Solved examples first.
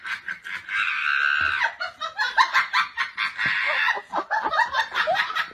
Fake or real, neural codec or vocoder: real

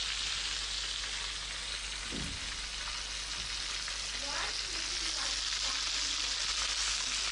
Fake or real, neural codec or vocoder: real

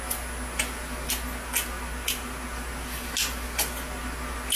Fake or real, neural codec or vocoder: real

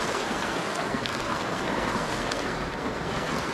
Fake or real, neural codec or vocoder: fake, codec, SNAC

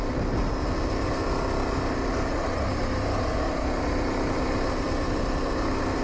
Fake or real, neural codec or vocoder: real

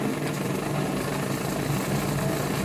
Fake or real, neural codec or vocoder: real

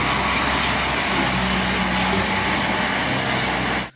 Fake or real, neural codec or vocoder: real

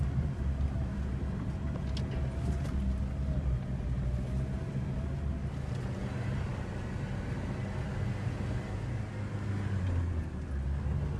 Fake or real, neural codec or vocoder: real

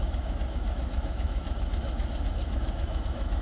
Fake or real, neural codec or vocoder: fake, autoencoder, DAC-VAE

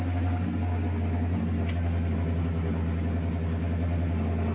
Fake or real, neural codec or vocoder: real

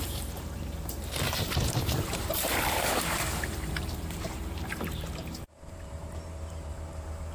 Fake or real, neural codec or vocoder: fake, vocoder, BigVGAN v2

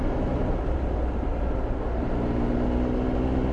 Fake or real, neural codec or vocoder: real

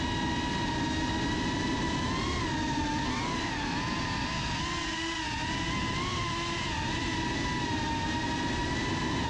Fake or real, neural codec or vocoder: real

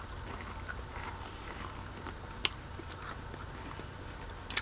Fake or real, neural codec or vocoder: real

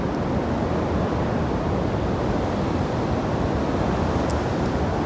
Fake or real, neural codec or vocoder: real